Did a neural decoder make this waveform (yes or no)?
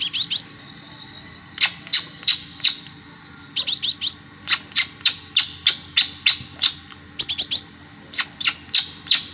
no